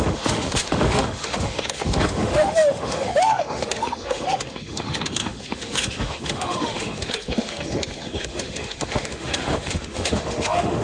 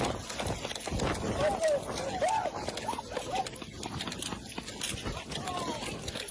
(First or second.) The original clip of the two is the second